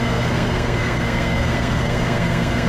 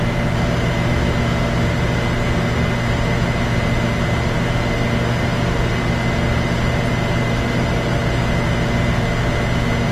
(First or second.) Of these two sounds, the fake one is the first